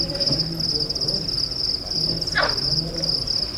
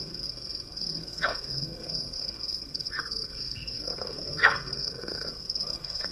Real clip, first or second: first